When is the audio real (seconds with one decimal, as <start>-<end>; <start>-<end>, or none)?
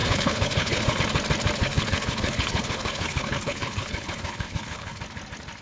1.0-1.6; 5.0-5.6